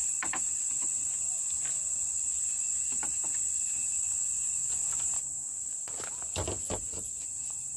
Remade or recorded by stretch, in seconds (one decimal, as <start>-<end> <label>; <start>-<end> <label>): 0.0-7.8 recorded